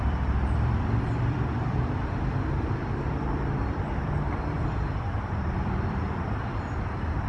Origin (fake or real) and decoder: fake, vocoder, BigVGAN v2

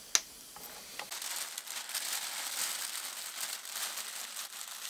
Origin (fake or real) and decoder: real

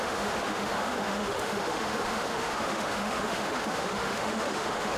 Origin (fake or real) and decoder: fake, autoencoder, DAC-VAE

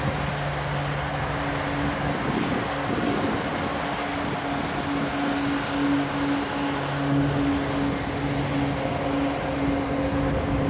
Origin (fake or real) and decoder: real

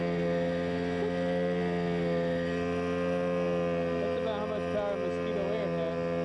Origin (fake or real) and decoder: real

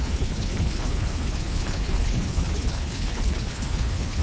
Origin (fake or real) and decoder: fake, codec, HILCodec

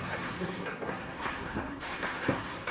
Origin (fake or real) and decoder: fake, codec, SNAC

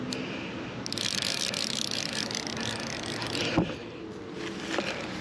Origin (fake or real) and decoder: real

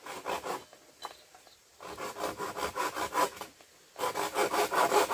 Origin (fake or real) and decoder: real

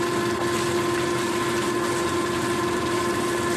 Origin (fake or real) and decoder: real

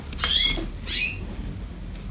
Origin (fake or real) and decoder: real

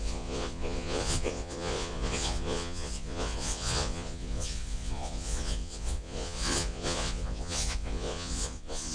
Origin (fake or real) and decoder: fake, vocoder, Vocos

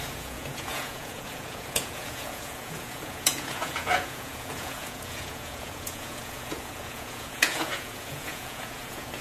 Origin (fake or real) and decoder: fake, vocoder, Vocos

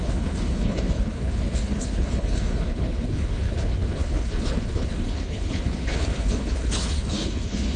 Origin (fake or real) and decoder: fake, codec, HILCodec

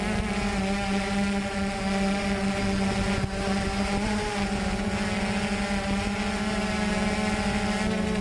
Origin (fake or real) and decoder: real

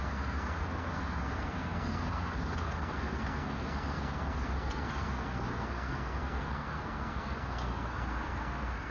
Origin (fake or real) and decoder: fake, codec, SNAC